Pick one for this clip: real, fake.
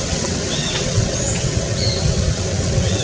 fake